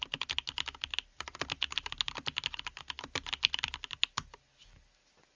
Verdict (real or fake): real